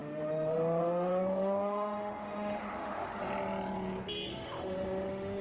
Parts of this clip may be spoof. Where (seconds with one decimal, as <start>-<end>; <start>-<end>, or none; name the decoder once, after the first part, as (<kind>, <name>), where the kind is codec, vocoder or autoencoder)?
0.0-3.2 (autoencoder, DAC-VAE); 4.3-5.4